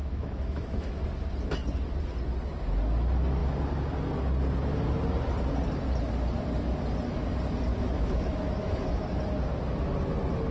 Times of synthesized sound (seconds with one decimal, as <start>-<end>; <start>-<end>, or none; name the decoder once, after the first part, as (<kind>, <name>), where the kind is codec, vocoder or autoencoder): 0.0-1.0 (autoencoder, DAC-VAE); 7.7-9.0